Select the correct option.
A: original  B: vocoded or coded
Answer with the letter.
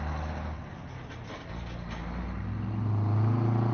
A